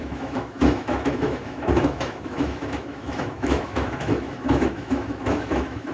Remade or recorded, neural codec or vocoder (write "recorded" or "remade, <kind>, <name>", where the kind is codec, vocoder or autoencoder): remade, autoencoder, DAC-VAE